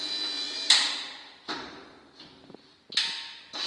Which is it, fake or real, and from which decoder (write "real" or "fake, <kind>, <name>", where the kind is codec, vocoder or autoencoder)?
real